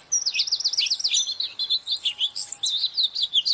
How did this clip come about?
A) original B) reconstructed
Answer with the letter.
A